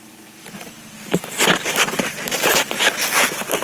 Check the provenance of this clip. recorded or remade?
remade